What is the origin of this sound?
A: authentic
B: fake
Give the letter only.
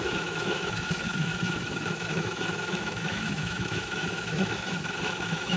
B